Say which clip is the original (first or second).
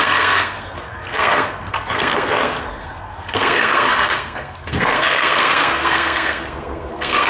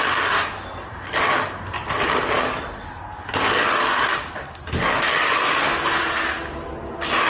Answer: second